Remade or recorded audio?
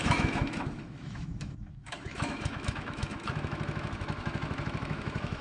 remade